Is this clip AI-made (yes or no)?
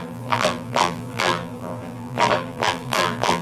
yes